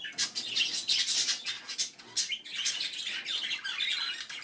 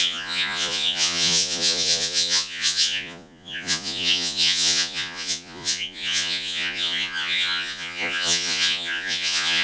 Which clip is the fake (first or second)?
second